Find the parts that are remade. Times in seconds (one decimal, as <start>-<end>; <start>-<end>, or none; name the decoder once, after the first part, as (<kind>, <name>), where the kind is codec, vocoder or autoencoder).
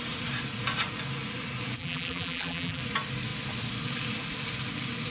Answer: 1.8-2.8 (vocoder, BigVGAN v2)